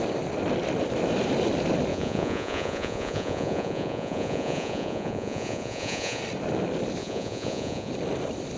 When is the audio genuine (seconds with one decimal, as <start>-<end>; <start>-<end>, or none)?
0.0-1.9; 6.2-7.0; 7.9-8.6